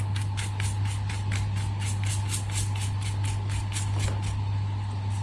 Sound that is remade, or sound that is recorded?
recorded